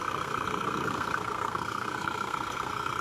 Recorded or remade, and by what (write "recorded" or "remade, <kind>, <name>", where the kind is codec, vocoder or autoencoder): remade, codec, SNAC